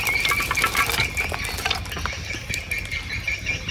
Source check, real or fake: real